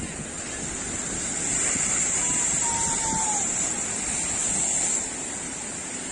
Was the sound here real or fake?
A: real